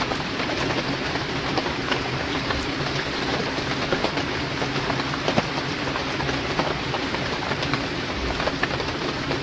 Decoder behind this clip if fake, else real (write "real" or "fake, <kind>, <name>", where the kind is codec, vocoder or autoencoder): fake, vocoder, BigVGAN v2